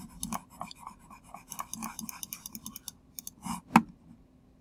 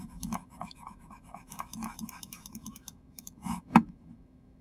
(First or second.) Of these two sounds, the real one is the first